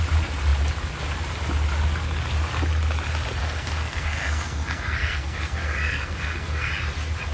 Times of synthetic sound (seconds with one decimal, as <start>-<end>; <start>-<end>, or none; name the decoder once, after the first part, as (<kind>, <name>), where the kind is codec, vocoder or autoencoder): 3.4-6.7 (codec, SNAC)